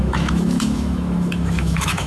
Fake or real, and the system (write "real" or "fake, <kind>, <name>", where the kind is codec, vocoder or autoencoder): fake, autoencoder, DAC-VAE